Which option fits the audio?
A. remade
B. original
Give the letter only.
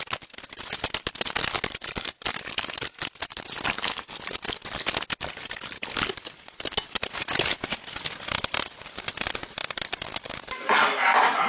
B